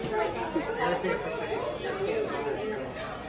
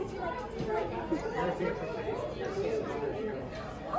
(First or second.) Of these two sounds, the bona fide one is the first